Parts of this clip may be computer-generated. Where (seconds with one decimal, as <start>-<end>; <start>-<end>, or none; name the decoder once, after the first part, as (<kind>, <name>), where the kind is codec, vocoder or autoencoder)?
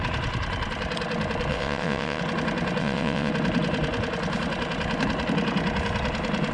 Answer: 1.5-2.2 (vocoder, WaveNeXt); 2.8-3.3